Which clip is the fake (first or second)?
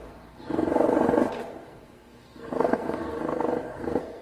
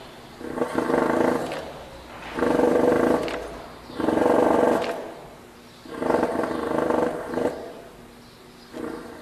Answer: first